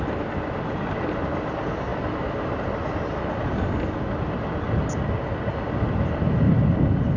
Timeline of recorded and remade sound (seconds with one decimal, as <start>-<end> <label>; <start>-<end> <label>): 0.0-7.2 recorded